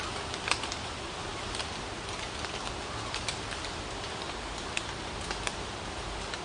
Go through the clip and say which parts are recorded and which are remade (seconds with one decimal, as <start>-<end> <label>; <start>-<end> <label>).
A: 0.0-6.4 recorded